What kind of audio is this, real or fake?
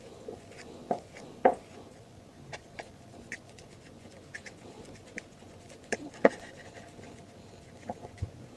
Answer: fake